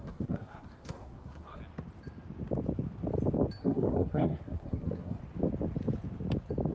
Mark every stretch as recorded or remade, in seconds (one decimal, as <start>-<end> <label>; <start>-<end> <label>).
0.0-1.6 remade; 1.6-3.6 recorded; 3.6-5.2 remade; 5.2-6.7 recorded